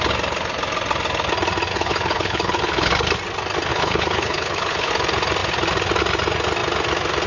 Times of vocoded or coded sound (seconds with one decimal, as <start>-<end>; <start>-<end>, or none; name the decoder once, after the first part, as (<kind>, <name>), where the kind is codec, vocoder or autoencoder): 1.7-2.9 (codec, HILCodec); 3.7-4.9